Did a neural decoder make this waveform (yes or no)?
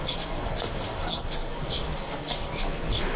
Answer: yes